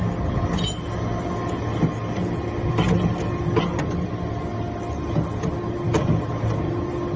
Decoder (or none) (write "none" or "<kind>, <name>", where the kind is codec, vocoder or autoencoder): none